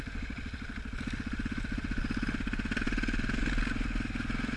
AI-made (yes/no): no